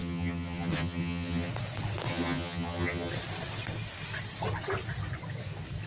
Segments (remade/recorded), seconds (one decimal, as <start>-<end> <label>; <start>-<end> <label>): 0.0-1.5 remade; 1.5-2.1 recorded; 2.1-3.1 remade; 3.1-5.9 recorded